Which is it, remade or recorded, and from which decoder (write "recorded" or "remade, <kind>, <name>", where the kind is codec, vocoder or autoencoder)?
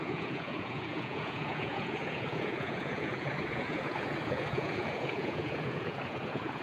remade, vocoder, Vocos